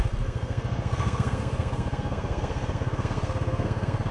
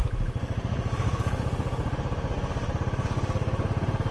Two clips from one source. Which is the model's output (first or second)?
first